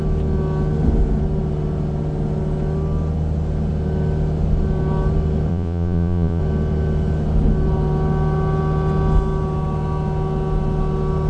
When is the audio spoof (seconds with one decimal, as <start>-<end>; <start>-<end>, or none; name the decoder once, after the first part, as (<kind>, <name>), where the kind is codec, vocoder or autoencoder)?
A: 5.5-6.4 (vocoder, Vocos)